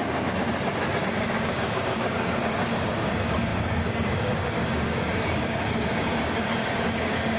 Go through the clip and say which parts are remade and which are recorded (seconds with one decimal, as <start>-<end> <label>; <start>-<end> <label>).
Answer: 0.0-1.0 recorded; 1.0-7.4 remade